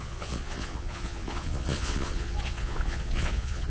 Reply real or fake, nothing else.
fake